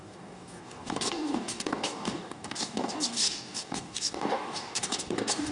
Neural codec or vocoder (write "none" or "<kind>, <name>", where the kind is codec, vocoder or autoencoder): codec, DAC